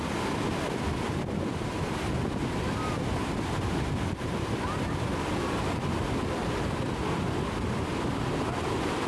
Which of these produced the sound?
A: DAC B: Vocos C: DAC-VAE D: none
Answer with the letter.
D